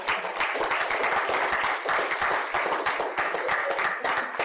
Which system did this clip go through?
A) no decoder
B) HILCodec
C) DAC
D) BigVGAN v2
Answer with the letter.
A